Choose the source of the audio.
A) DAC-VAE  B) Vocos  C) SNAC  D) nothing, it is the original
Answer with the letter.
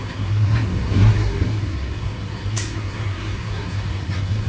C